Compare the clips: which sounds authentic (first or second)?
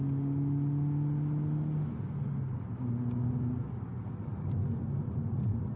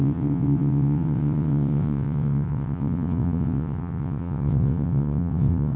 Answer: first